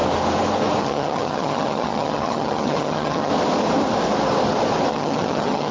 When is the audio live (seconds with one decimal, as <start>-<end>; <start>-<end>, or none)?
0.0-0.8; 3.3-4.9